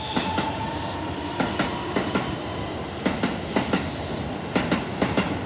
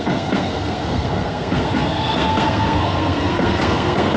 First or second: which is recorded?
first